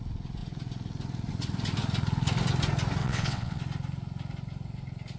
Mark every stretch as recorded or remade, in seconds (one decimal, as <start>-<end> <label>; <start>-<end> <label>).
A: 0.0-3.0 recorded; 3.0-3.6 remade; 3.6-5.2 recorded